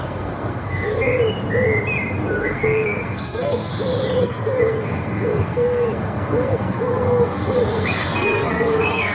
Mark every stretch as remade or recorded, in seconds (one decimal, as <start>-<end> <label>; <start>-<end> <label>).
0.0-1.1 remade; 1.1-2.4 recorded; 2.4-3.7 remade; 3.7-4.2 recorded; 4.2-9.1 remade